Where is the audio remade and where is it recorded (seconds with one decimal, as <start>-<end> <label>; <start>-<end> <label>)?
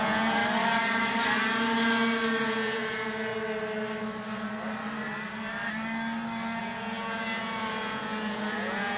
0.0-0.4 remade; 0.4-2.4 recorded; 2.4-3.3 remade; 3.3-6.6 recorded; 6.6-9.0 remade